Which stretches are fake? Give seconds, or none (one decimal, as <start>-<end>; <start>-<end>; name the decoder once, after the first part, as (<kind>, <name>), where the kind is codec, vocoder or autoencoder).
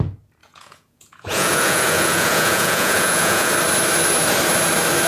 0.4-3.5 (vocoder, Vocos)